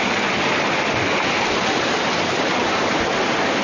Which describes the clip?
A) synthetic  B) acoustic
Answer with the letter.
B